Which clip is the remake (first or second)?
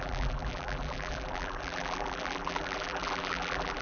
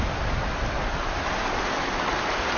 first